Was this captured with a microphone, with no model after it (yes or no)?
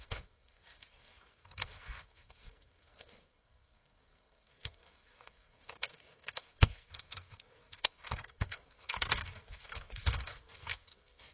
no